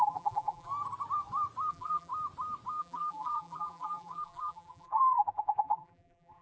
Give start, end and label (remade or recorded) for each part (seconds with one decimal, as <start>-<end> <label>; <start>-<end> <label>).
0.0-0.7 remade; 0.7-1.7 recorded; 1.7-2.1 remade; 2.1-2.8 recorded; 2.8-6.4 remade